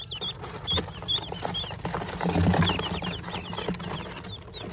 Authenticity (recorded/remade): recorded